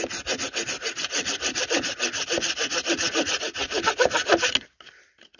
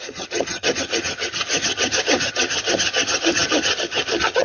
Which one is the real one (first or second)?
first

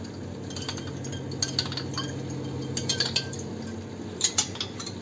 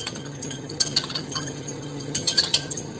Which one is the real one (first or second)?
first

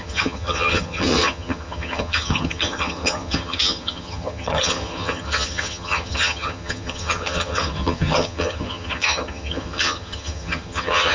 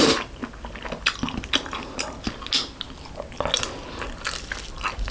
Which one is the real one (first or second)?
second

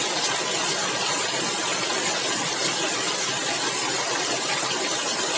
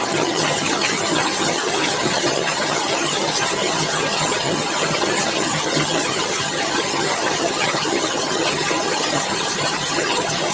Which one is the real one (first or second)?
first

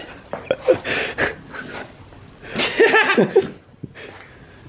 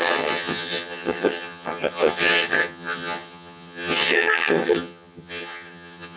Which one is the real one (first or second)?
first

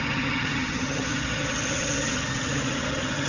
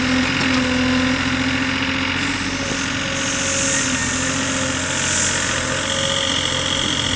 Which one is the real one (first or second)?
second